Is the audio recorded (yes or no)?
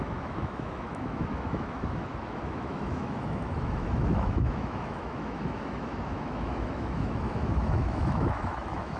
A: no